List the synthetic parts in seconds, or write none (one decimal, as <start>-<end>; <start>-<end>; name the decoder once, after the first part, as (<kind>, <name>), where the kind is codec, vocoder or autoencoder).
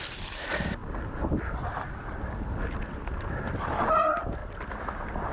0.8-2.8 (vocoder, BigVGAN v2)